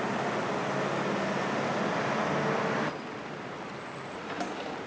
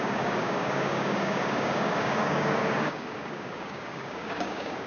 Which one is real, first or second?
first